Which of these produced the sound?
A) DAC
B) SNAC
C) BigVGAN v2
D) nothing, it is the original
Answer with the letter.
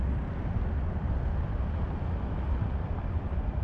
D